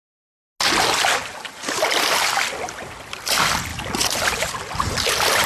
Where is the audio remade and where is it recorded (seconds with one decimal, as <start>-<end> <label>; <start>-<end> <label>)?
0.0-5.5 recorded